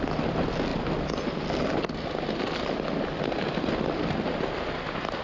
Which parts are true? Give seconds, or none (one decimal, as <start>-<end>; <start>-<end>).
0.0-5.2